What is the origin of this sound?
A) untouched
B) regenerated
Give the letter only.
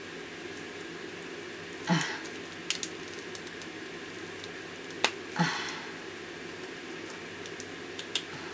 A